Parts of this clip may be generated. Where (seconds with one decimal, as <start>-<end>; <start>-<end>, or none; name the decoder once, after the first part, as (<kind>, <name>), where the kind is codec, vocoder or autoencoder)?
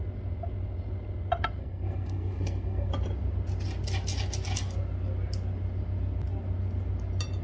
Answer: 1.6-2.9 (codec, SNAC)